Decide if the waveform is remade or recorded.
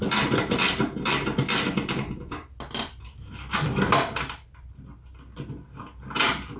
recorded